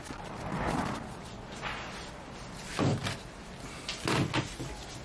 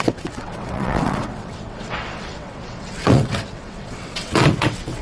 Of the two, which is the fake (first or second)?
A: second